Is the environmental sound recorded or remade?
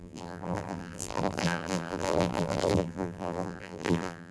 remade